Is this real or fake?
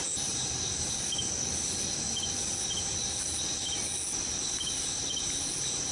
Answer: real